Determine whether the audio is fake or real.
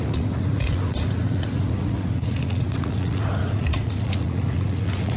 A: fake